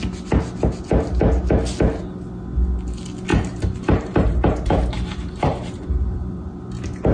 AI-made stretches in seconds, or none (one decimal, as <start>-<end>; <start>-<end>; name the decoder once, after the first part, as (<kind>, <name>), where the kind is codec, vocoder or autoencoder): 3.3-6.6 (vocoder, BigVGAN v2)